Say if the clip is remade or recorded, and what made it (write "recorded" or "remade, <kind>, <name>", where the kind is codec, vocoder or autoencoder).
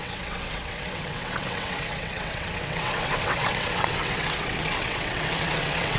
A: remade, vocoder, WaveNeXt